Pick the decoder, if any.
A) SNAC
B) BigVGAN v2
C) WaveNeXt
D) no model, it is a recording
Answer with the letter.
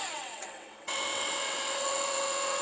C